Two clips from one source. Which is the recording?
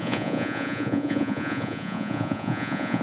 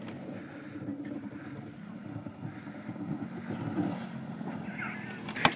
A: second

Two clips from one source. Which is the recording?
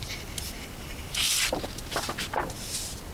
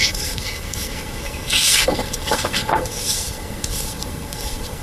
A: first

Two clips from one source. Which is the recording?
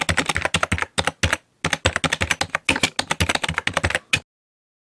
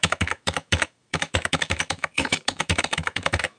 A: first